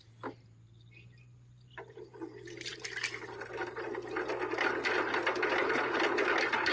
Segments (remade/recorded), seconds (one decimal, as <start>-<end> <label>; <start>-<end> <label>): 0.0-2.7 recorded; 2.7-3.9 remade; 3.9-6.7 recorded